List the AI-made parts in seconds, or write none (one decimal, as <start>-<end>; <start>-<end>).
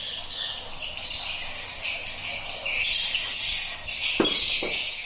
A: none